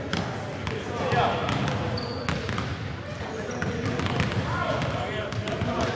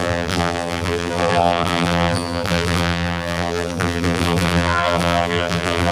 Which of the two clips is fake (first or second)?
second